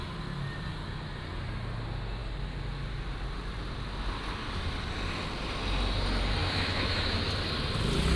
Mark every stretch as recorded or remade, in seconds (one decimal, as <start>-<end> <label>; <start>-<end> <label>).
0.0-6.4 recorded; 6.4-7.2 remade; 7.2-8.2 recorded